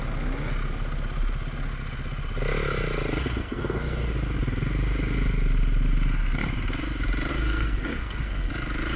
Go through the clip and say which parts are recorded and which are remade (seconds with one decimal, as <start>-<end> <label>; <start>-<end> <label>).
0.0-3.4 recorded; 3.4-4.0 remade; 4.0-7.3 recorded; 7.3-8.5 remade; 8.5-9.0 recorded